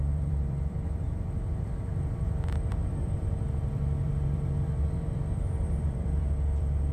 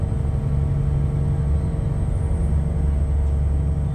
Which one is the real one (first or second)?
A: second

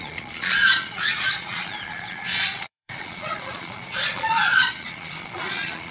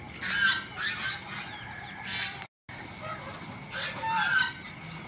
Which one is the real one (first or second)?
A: second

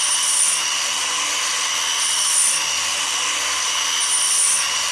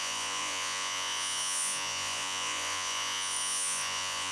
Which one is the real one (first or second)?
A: first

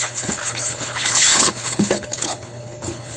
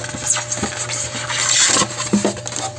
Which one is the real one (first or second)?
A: second